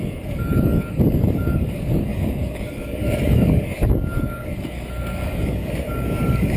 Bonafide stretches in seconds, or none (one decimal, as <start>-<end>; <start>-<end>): none